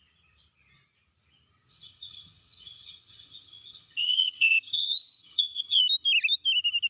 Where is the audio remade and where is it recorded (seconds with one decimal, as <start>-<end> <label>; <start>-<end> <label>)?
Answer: 0.0-1.7 recorded; 1.7-5.8 remade; 5.8-6.9 recorded